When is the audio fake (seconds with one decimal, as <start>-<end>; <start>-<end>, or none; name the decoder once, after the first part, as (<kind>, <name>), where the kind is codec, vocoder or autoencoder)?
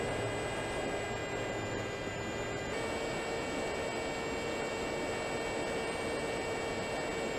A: none